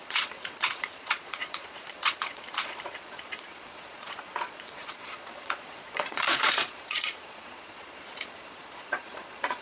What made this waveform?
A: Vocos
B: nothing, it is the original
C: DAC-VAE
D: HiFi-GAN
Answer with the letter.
A